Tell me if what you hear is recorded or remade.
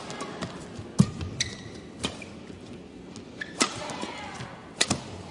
recorded